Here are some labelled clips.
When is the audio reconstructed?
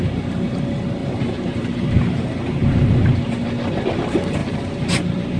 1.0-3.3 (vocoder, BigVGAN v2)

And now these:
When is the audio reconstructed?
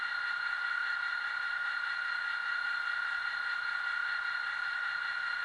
none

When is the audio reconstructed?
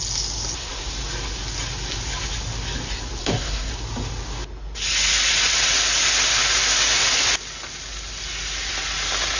3.2-3.7 (codec, SNAC)